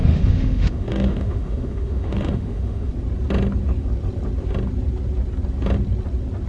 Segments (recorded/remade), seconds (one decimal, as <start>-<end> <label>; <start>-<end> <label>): 0.0-2.9 remade; 2.9-6.5 recorded